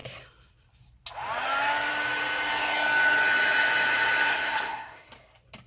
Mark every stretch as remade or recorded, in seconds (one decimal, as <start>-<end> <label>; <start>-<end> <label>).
0.0-4.3 recorded; 4.3-5.1 remade; 5.1-5.7 recorded